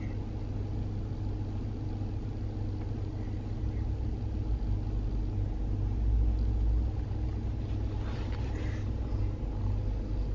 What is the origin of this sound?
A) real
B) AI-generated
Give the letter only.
A